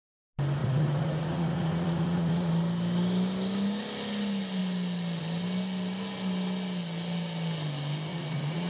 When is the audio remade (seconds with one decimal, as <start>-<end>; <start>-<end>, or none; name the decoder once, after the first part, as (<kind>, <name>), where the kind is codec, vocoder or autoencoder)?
0.6-2.5 (vocoder, Vocos); 8.1-8.7